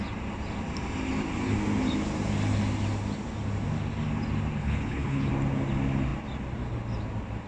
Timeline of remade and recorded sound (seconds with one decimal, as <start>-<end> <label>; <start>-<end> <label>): 0.0-4.6 recorded; 4.6-5.3 remade; 5.3-7.5 recorded